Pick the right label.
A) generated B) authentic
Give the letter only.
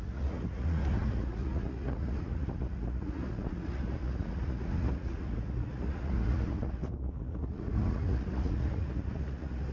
A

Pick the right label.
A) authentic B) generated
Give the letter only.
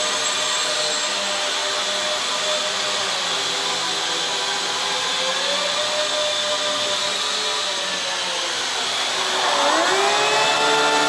A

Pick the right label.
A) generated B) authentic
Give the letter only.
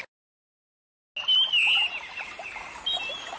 B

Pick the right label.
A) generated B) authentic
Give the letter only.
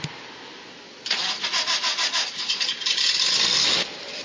B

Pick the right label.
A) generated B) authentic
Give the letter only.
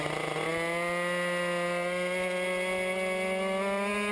B